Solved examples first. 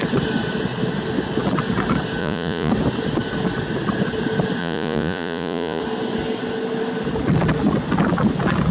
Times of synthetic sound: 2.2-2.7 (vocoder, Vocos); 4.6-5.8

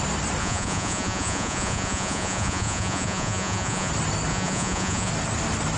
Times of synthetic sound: 0.4-3.9 (vocoder, Vocos); 4.3-5.1